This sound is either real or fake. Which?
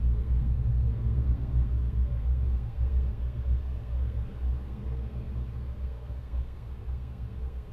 fake